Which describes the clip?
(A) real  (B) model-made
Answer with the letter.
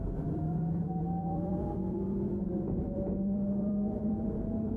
B